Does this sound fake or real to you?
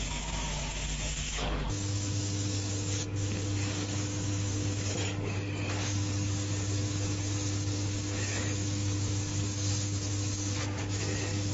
fake